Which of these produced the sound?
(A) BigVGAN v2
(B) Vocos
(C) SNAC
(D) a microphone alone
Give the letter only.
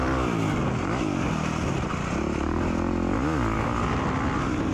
D